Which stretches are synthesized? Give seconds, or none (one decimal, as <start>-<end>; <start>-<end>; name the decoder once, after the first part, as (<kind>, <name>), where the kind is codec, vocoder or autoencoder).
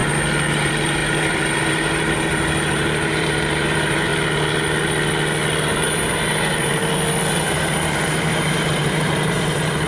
0.5-4.1 (vocoder, BigVGAN v2); 5.6-6.8; 7.3-9.9